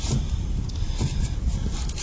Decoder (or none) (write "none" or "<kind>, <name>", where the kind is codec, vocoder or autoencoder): none